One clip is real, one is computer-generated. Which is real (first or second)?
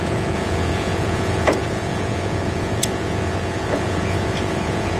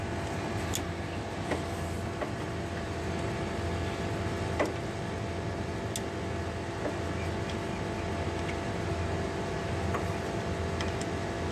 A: second